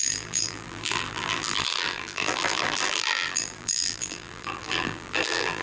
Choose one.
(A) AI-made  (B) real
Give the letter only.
A